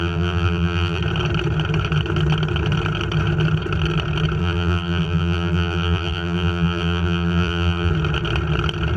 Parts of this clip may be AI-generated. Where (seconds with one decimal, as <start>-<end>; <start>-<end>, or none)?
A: 0.0-1.0; 4.4-7.9